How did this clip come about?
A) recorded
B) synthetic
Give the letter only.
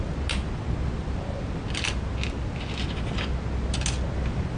A